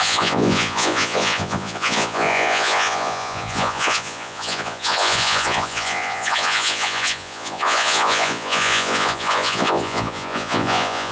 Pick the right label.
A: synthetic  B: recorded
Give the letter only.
A